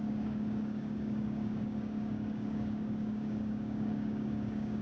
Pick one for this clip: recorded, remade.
remade